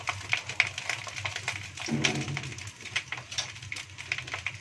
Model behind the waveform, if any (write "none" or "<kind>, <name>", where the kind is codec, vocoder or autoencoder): none